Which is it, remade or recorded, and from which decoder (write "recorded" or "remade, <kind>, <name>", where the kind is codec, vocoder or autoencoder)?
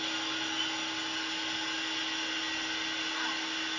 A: recorded